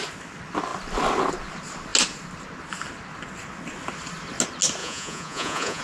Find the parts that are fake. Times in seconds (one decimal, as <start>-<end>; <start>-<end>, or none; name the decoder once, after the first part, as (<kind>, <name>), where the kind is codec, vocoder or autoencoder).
4.8-5.8 (vocoder, Vocos)